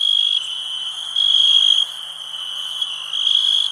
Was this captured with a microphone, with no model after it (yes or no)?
yes